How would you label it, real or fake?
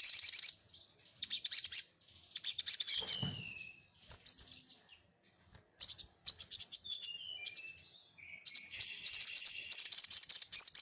real